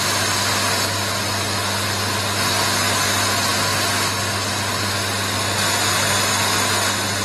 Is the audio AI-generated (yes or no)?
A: no